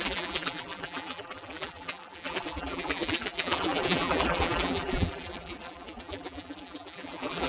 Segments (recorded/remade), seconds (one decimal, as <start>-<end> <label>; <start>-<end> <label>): 0.0-7.5 remade